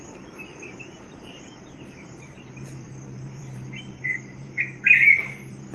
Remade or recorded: remade